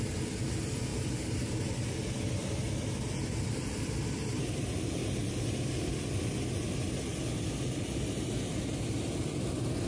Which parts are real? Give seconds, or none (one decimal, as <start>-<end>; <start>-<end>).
0.0-0.9; 3.9-9.9